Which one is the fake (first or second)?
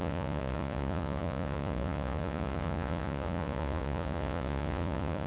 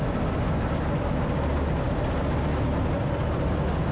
first